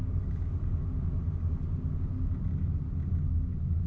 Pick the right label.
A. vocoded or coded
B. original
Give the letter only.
B